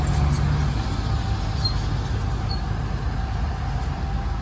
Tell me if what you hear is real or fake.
real